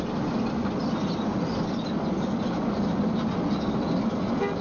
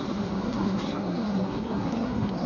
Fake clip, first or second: second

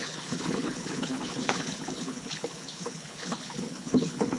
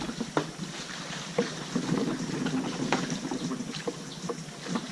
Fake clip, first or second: first